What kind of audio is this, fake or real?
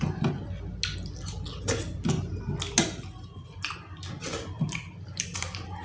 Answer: real